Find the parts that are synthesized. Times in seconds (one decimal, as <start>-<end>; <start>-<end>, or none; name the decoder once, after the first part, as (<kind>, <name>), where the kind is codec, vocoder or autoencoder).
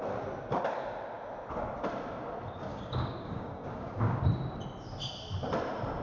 2.7-4.2 (codec, DAC)